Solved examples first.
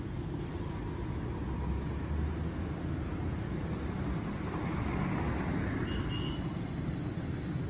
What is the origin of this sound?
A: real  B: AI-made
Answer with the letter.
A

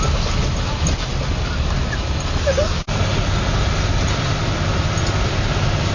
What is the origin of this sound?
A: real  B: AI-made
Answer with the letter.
A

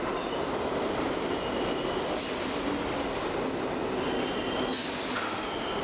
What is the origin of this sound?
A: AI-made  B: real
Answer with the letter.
B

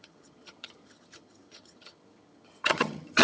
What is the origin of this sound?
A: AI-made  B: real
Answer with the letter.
A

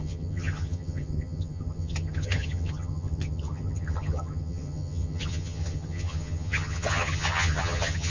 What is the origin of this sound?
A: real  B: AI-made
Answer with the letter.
B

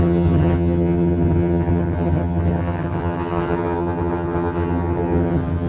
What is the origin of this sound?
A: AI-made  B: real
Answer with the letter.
A